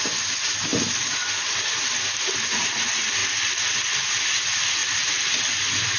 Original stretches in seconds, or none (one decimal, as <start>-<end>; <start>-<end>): 0.0-6.0